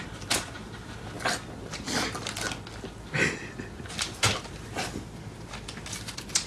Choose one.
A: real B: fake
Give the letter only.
A